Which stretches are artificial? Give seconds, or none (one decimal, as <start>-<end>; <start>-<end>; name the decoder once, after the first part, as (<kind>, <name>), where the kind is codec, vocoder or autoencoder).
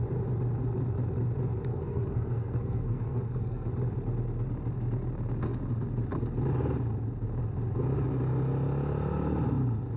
1.7-3.7 (codec, SNAC)